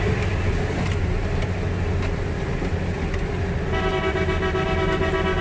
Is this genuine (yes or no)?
yes